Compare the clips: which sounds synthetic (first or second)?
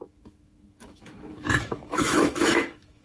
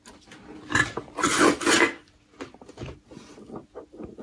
first